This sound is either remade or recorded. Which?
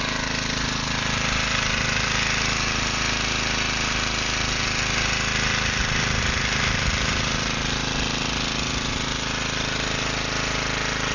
recorded